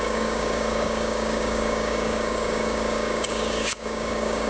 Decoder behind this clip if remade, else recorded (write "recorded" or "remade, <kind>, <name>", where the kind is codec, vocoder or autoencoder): remade, codec, DAC